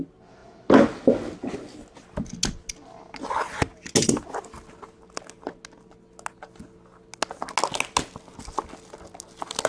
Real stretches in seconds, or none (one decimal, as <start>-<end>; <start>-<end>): 0.0-9.7